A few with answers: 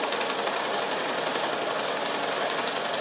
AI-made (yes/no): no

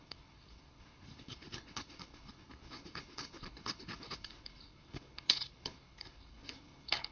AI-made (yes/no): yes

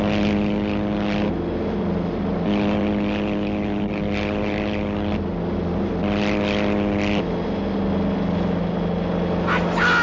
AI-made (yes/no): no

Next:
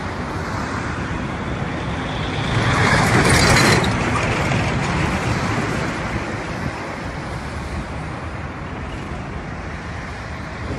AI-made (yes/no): no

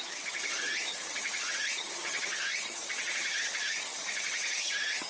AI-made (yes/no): yes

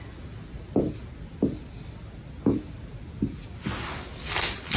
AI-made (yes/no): no